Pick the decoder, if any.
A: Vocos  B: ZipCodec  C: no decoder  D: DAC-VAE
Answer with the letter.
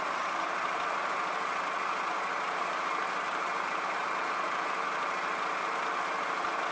C